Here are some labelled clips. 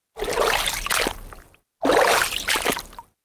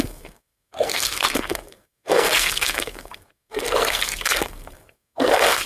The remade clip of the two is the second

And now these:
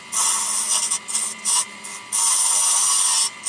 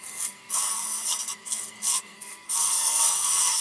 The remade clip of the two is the second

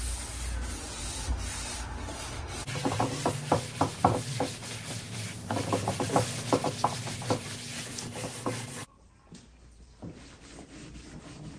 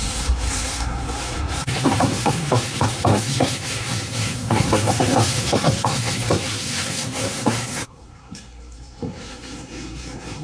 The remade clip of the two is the second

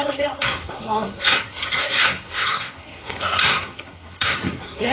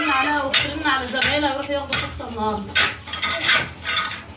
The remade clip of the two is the first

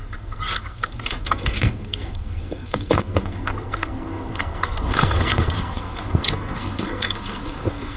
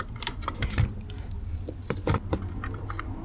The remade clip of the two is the first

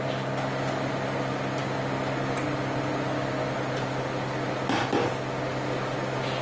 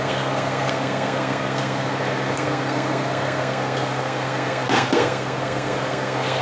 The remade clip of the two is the second